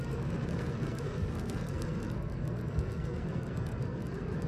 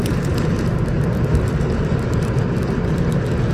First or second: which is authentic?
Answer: second